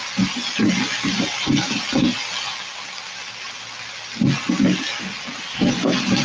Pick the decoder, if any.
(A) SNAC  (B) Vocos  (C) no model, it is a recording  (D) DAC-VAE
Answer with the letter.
C